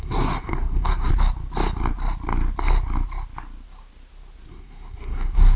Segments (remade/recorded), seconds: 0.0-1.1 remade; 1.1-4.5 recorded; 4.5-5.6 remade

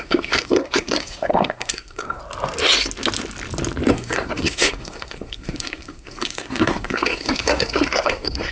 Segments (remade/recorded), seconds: 0.0-2.2 remade; 2.2-3.9 recorded; 3.9-8.5 remade

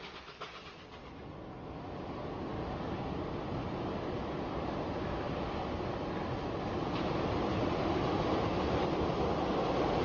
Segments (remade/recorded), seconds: 0.0-10.0 recorded

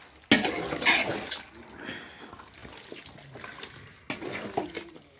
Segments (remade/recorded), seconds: 0.0-5.2 recorded

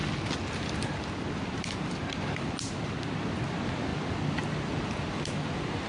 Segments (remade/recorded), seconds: 0.0-5.9 recorded

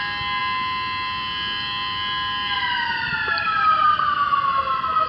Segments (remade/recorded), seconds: 0.0-5.1 recorded